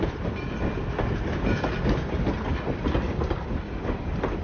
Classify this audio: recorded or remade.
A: recorded